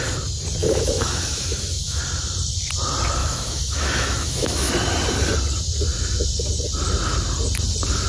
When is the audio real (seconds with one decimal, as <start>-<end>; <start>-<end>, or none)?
0.0-0.6; 2.0-3.2; 4.7-8.1